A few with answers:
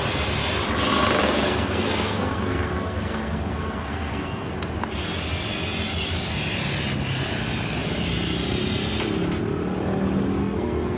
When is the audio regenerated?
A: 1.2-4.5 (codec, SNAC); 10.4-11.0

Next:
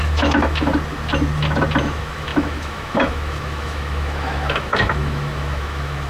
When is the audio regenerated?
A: 0.0-0.7 (autoencoder, DAC-VAE); 1.8-6.1

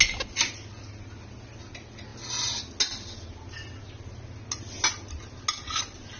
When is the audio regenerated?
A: none

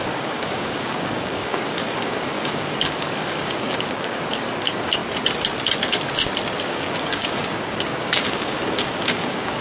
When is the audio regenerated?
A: 0.0-5.0 (codec, DAC); 6.6-9.6

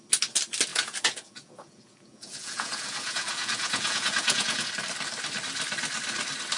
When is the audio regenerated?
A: 0.7-4.7 (vocoder, Vocos)

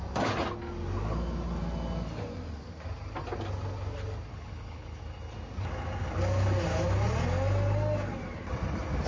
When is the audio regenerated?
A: 4.3-5.0 (codec, HILCodec)